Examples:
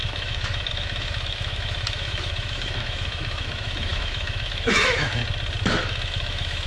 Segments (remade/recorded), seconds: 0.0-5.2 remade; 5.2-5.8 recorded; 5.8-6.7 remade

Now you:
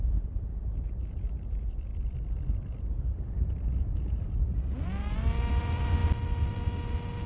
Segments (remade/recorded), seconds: 0.0-1.9 remade; 1.9-5.6 recorded; 5.6-6.0 remade; 6.0-7.3 recorded